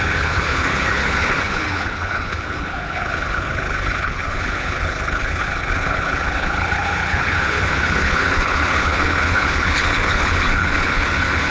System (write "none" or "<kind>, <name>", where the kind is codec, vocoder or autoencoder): codec, HILCodec